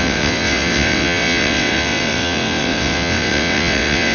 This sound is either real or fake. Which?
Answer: fake